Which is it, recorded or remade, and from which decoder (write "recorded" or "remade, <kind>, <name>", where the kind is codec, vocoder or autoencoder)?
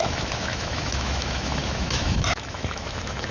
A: remade, autoencoder, DAC-VAE